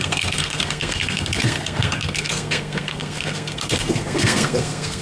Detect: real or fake fake